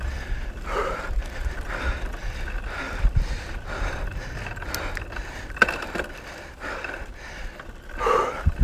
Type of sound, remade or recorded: recorded